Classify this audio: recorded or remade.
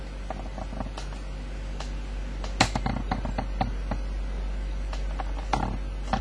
recorded